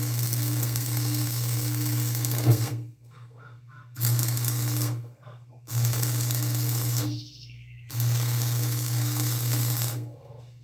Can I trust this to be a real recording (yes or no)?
no